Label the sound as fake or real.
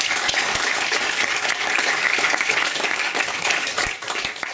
fake